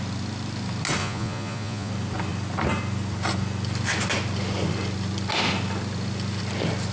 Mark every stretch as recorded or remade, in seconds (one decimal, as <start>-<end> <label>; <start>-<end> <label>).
0.0-1.0 recorded; 1.0-1.9 remade; 1.9-6.9 recorded